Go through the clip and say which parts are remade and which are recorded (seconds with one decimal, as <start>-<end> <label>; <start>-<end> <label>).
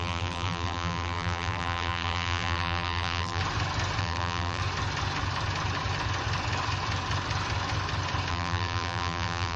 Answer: 0.0-3.4 remade; 3.4-4.0 recorded; 4.0-4.6 remade; 4.6-8.3 recorded; 8.3-9.6 remade